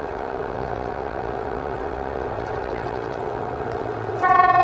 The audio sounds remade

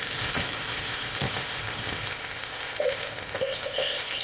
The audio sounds remade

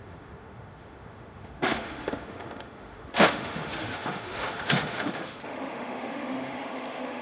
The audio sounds remade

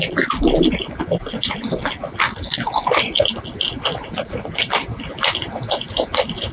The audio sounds recorded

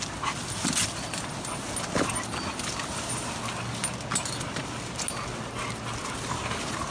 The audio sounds recorded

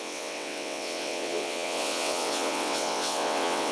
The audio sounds remade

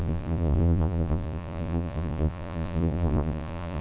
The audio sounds remade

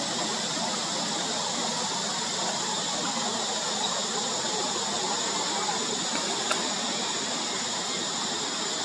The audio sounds recorded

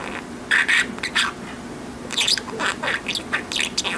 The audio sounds recorded